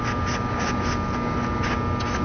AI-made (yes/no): no